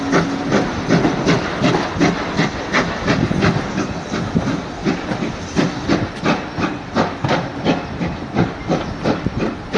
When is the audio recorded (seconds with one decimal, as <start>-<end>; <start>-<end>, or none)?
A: 0.0-9.8